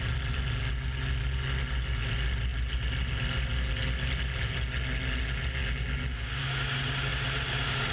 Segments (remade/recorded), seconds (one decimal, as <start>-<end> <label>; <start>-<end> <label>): 0.0-7.9 recorded